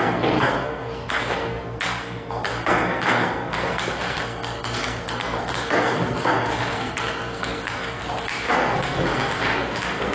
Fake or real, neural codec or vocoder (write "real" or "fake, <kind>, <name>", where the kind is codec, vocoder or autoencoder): fake, codec, SNAC